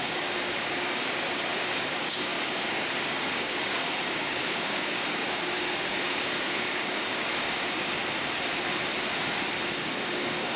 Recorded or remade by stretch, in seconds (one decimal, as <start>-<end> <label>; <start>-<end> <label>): 0.0-8.0 remade; 8.0-10.0 recorded; 10.0-10.6 remade